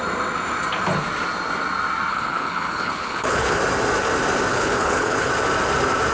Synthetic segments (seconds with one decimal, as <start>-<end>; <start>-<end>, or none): 2.1-3.6; 4.5-5.3